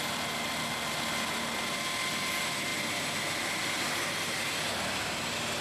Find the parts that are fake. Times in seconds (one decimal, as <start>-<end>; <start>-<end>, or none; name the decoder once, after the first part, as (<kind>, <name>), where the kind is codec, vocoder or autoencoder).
none